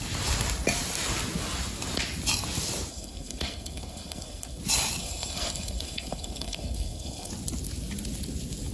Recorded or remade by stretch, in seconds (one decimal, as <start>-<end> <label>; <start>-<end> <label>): 0.0-2.9 recorded; 2.9-4.6 remade; 4.6-5.0 recorded; 5.0-7.3 remade; 7.3-8.7 recorded